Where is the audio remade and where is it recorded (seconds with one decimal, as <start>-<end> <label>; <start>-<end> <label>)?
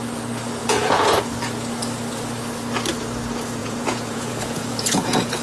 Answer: 0.0-0.6 recorded; 0.6-1.2 remade; 1.2-3.6 recorded; 3.6-5.4 remade